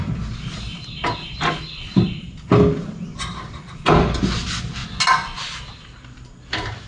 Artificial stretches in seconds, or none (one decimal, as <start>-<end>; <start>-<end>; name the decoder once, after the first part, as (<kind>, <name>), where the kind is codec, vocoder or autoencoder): 0.0-0.7 (vocoder, BigVGAN v2); 3.5-4.8